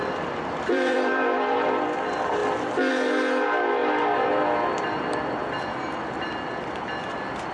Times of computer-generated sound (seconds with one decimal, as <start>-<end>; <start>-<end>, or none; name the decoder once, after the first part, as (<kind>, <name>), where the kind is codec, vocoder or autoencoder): 0.0-2.4 (vocoder, BigVGAN v2); 2.9-3.8; 6.3-7.5